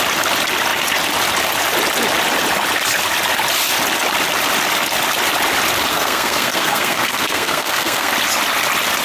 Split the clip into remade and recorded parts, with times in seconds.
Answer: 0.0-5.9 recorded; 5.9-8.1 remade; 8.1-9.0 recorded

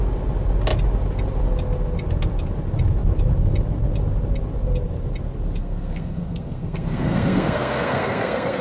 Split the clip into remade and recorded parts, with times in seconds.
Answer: 0.0-5.6 recorded; 5.6-8.6 remade